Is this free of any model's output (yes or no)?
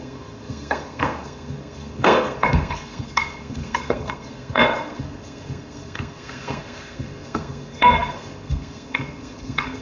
no